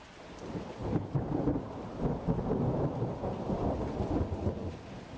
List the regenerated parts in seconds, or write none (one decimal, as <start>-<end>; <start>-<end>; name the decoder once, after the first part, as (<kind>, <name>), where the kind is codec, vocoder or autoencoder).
0.8-2.4 (vocoder, BigVGAN v2)